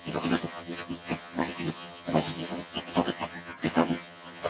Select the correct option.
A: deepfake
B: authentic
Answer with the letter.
A